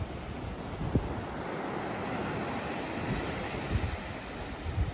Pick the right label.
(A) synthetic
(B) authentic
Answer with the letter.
B